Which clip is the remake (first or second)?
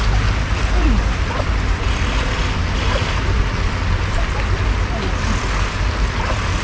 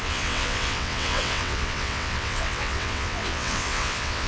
second